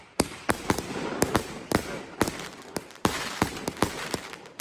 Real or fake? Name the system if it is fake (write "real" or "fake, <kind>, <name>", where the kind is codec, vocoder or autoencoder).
fake, vocoder, BigVGAN v2